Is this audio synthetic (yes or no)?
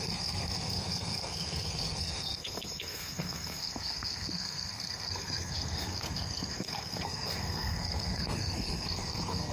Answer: yes